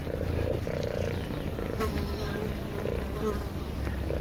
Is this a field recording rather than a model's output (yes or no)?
yes